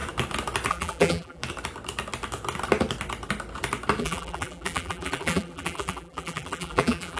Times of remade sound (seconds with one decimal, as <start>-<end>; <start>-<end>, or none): 0.7-1.4; 4.0-7.2